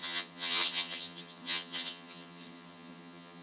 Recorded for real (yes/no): no